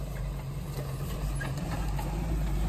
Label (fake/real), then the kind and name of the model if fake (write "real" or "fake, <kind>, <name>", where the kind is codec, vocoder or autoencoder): real